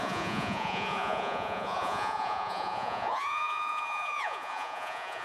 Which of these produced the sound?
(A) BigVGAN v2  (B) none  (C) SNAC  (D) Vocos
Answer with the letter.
D